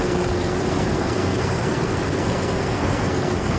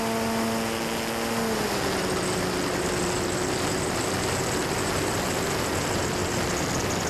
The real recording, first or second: second